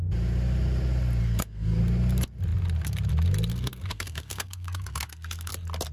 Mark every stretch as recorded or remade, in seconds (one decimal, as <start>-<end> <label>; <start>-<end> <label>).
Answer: 0.0-1.2 recorded; 1.2-1.8 remade; 1.8-3.5 recorded; 3.5-5.5 remade; 5.5-5.9 recorded